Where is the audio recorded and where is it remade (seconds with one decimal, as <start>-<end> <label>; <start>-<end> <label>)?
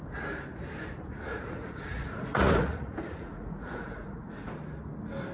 0.0-1.3 recorded; 1.3-4.5 remade; 4.5-5.3 recorded